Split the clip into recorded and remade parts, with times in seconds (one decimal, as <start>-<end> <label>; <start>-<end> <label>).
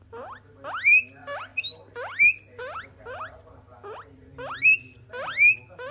0.0-5.9 recorded